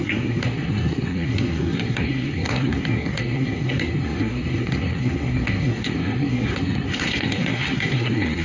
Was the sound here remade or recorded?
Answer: remade